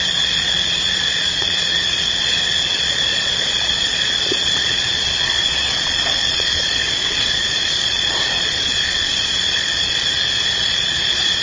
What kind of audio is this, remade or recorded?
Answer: remade